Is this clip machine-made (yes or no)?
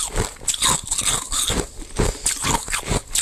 no